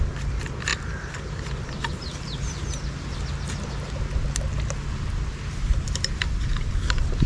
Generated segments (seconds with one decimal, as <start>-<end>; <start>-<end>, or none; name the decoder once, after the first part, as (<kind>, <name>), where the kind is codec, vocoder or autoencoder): 0.0-2.6 (vocoder, BigVGAN v2); 6.2-7.3